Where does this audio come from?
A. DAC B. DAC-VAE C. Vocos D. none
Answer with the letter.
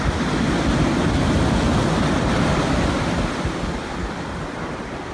D